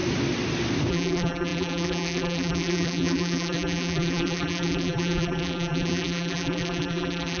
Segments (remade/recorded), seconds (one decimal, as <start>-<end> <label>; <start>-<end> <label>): 0.0-0.9 recorded; 0.9-7.4 remade